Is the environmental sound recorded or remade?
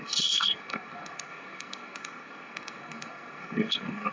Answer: remade